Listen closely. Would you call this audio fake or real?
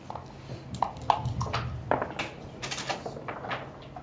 real